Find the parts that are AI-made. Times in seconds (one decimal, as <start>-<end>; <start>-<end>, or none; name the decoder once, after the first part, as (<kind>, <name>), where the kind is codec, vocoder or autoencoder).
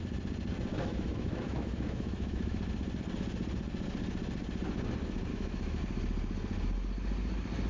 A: 0.7-2.6 (autoencoder, DAC-VAE); 5.3-5.8